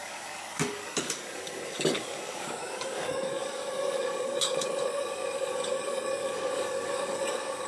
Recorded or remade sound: remade